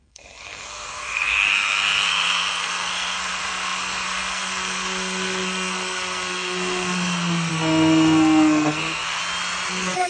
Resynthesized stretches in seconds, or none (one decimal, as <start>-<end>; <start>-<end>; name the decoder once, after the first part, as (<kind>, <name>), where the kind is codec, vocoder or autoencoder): 0.0-9.2 (codec, SNAC); 9.7-10.1

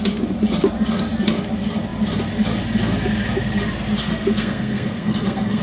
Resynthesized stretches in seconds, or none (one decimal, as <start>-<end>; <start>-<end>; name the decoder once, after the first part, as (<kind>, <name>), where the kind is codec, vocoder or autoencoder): 4.0-5.6 (codec, SNAC)

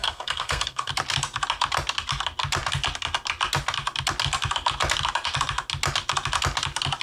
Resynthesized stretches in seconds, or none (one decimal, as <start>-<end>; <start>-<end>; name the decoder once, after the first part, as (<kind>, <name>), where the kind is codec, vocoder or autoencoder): 0.0-0.9 (codec, SNAC)

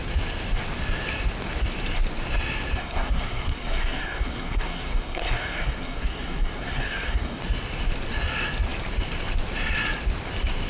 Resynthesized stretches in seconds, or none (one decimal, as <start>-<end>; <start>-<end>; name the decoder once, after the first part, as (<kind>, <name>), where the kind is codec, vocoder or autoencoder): 2.8-7.4 (codec, SNAC)

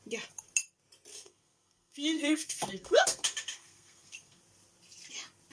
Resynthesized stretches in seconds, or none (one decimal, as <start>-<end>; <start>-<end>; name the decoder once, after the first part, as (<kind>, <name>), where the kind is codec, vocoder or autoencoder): 1.1-4.4 (codec, SNAC)

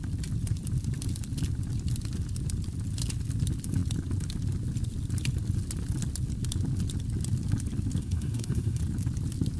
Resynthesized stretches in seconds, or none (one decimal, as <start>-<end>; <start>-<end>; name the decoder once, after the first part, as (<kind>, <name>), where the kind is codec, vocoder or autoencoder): 8.0-8.8 (codec, SNAC)